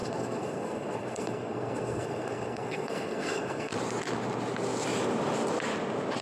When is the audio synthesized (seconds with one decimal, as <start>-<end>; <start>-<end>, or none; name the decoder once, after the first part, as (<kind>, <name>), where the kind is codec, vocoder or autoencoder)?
0.0-3.7 (codec, SNAC)